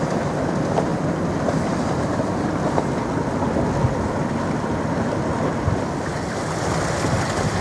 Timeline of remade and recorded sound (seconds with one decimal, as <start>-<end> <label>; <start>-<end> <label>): 0.0-0.9 recorded; 0.9-2.2 remade; 2.2-7.6 recorded